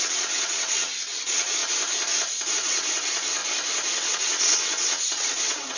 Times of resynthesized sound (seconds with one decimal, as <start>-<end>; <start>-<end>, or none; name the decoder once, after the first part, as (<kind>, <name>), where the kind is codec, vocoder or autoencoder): 0.0-1.6 (vocoder, WaveNeXt); 2.5-3.4; 4.0-5.8